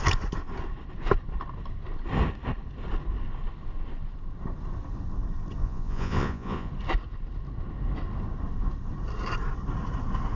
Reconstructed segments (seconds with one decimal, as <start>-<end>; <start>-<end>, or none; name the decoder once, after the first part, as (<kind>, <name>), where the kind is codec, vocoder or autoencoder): 5.6-6.7 (vocoder, Vocos)